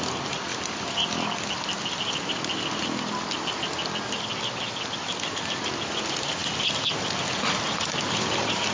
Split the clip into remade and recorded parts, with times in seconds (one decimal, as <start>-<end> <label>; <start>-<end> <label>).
0.0-8.7 recorded